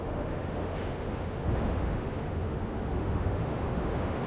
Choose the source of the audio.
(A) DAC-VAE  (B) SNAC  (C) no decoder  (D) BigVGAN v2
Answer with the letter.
A